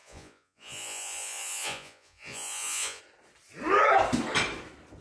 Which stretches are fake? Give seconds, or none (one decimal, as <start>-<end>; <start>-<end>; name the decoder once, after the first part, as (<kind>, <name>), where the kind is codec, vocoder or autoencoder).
0.0-3.0 (vocoder, Vocos)